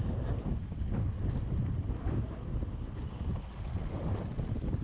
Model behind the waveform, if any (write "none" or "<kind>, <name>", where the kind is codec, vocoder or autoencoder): none